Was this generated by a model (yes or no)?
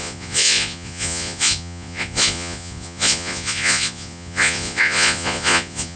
yes